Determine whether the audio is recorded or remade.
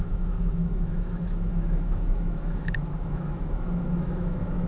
remade